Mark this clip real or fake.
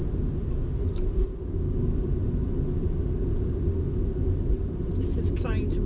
real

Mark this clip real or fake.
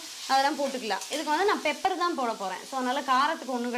real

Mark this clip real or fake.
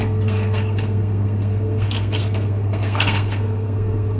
fake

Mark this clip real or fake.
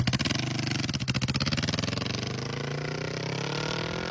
real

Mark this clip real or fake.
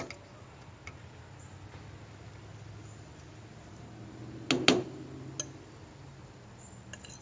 real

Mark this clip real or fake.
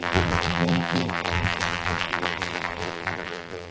fake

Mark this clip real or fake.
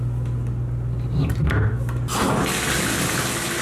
real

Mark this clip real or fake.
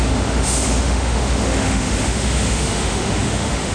fake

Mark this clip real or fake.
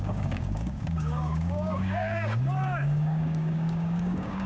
fake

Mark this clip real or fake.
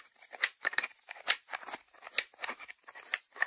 fake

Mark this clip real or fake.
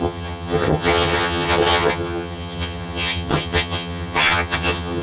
fake